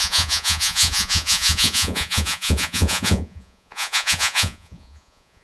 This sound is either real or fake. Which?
fake